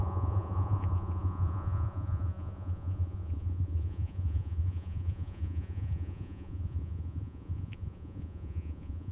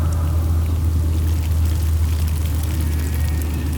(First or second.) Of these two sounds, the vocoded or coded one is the first